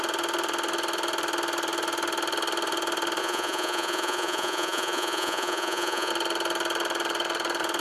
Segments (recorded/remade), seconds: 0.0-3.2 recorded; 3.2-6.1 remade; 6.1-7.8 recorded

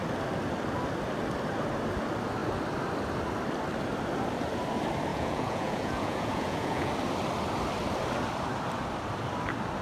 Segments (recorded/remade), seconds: 0.0-5.1 recorded; 5.1-6.9 remade; 6.9-9.8 recorded

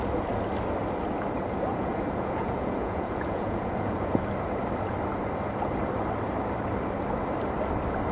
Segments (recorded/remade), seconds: 0.0-1.7 recorded; 1.7-4.2 remade; 4.2-8.1 recorded